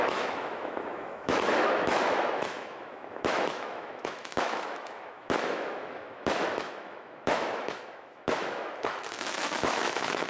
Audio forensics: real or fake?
fake